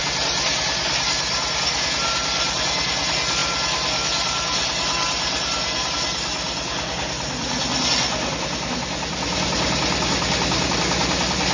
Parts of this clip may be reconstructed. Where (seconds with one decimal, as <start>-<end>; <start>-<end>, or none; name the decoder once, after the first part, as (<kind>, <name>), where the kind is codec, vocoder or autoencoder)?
none